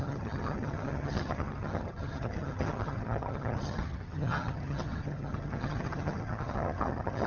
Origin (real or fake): fake